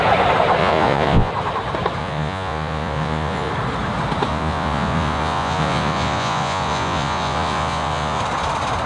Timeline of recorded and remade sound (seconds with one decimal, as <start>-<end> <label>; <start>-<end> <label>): 0.0-0.6 recorded; 0.6-1.3 remade; 1.3-2.0 recorded; 2.0-3.5 remade; 3.5-4.3 recorded; 4.3-8.2 remade; 8.2-8.9 recorded